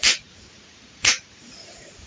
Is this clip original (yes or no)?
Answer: no